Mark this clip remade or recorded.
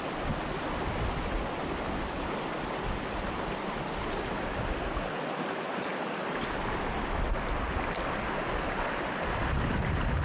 recorded